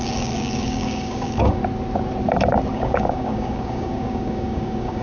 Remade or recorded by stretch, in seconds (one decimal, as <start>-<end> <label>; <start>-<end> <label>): 0.0-1.6 remade; 1.6-2.7 recorded; 2.7-5.0 remade